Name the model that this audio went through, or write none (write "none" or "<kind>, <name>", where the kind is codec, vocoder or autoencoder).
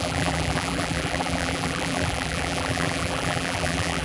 vocoder, BigVGAN v2